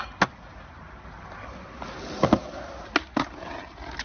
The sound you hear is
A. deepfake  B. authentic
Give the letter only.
B